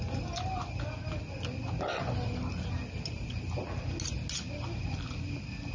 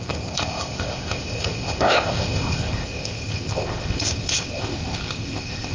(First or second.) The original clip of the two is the first